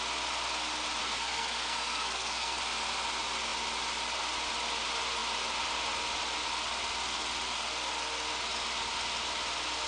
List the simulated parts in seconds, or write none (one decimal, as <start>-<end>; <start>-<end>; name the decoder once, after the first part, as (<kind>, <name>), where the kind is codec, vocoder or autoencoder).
1.0-2.6 (codec, SNAC)